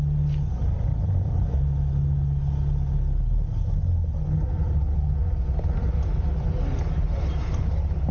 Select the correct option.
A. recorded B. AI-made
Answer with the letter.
A